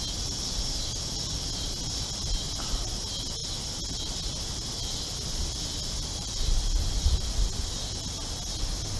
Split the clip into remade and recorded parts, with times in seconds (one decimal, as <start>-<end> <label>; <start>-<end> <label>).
0.0-1.8 recorded; 1.8-2.3 remade; 2.3-3.4 recorded; 3.4-6.7 remade; 6.7-9.0 recorded